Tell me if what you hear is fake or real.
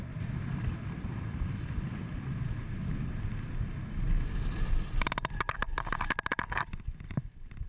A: real